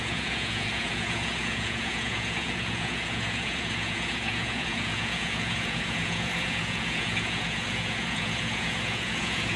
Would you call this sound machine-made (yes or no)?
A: yes